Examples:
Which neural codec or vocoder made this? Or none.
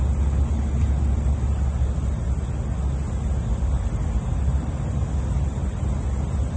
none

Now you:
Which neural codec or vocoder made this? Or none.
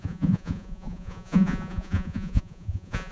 vocoder, Vocos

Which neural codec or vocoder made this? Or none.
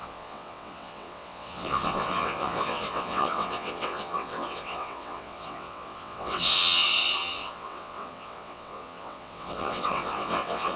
vocoder, WaveNeXt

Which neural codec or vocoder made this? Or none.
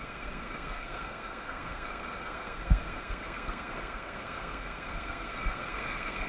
codec, SNAC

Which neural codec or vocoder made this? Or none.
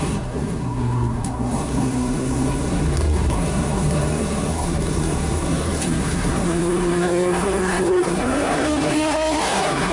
codec, SNAC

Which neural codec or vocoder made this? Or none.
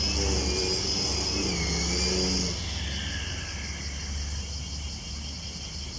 none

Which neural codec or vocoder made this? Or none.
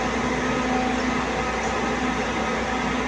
none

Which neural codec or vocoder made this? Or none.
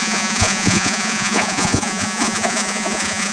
vocoder, Vocos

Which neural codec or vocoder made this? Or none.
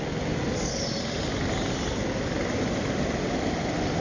none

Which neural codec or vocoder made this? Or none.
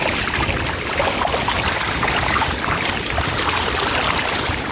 none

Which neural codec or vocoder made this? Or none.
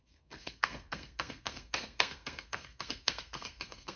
codec, SNAC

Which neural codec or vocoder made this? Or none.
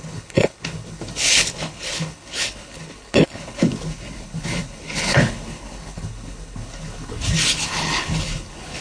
codec, HILCodec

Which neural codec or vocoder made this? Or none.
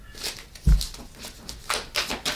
none